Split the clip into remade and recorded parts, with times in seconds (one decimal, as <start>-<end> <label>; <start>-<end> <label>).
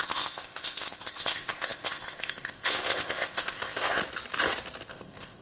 0.0-4.0 remade; 4.0-4.9 recorded; 4.9-5.4 remade